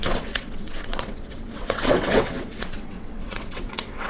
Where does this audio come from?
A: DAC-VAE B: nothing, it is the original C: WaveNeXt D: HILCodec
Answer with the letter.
C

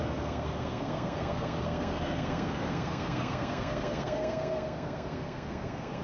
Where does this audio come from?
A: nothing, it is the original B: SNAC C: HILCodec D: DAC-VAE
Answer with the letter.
B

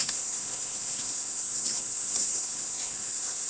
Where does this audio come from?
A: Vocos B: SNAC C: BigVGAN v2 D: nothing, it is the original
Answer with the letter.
B